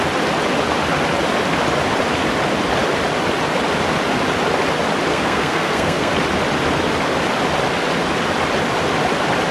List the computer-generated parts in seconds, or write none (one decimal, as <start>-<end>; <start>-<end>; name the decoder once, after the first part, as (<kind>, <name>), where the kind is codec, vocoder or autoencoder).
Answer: 5.1-6.1 (codec, SNAC)

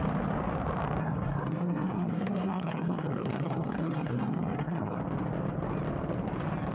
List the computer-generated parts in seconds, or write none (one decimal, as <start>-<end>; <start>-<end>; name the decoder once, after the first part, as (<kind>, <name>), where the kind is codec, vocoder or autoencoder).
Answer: 1.0-5.0 (codec, SNAC)